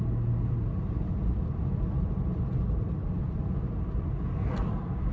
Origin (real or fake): real